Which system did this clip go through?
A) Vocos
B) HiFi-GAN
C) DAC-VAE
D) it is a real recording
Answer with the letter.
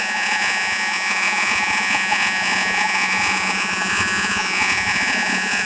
A